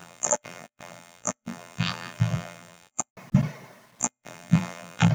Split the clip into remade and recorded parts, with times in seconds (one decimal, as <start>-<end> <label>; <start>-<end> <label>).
0.0-3.1 remade; 3.1-4.0 recorded; 4.0-5.1 remade